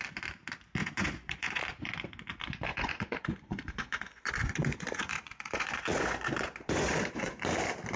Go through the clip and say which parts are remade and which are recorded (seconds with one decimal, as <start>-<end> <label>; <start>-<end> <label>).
0.0-0.8 recorded; 0.8-1.6 remade; 1.6-2.7 recorded; 2.7-7.4 remade; 7.4-8.0 recorded